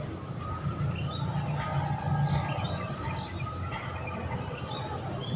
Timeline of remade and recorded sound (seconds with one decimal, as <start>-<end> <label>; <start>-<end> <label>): 0.0-5.4 recorded